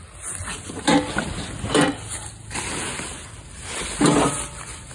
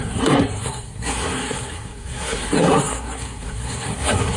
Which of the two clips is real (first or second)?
first